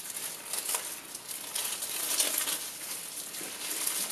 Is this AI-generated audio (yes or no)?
no